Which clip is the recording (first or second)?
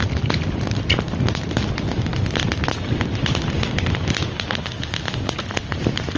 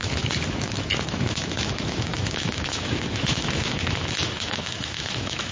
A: first